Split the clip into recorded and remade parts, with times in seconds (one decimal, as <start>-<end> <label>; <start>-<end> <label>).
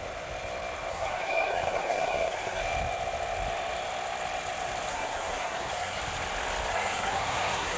0.0-0.9 recorded; 0.9-2.6 remade; 2.6-4.9 recorded; 4.9-6.0 remade; 6.0-6.7 recorded; 6.7-7.8 remade